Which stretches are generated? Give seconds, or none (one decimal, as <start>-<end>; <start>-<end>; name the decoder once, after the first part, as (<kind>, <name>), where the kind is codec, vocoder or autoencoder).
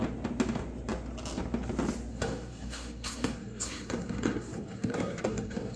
2.1-5.8 (codec, SNAC)